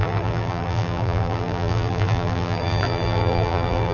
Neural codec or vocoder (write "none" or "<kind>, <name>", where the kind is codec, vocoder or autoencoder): vocoder, BigVGAN v2